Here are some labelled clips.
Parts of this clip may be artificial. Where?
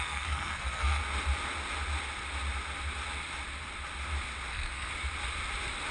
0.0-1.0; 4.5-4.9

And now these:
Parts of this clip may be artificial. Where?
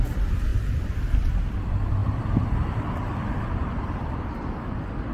0.5-1.3; 2.0-4.2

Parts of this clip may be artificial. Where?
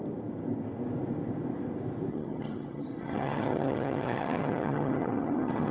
2.1-5.7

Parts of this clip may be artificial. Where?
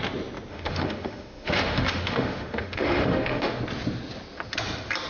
0.5-3.6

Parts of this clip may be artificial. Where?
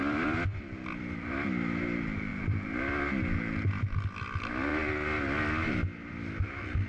0.0-1.3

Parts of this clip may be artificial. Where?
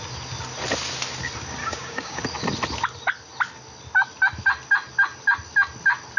1.6-2.2